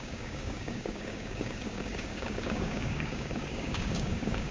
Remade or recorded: remade